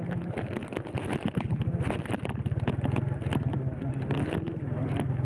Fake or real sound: real